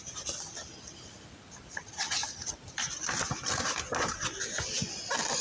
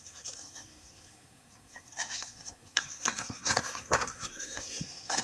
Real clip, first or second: first